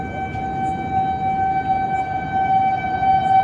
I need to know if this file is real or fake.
real